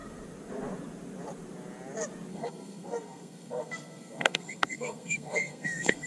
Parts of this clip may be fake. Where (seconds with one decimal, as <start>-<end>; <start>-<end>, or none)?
2.3-6.1